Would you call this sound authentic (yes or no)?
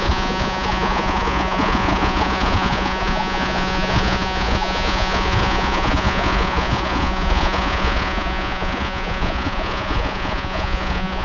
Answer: no